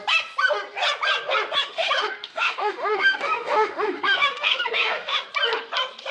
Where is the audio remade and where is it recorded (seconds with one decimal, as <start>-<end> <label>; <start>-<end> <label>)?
0.0-1.6 recorded; 1.6-5.3 remade; 5.3-6.1 recorded